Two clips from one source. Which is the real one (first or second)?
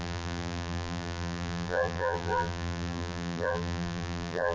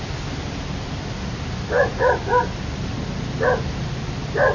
second